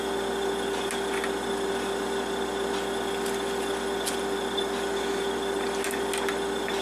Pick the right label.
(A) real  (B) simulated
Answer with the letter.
A